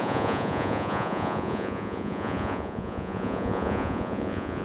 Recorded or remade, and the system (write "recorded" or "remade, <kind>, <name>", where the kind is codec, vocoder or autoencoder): remade, vocoder, Vocos